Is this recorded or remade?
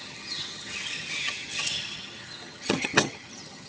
remade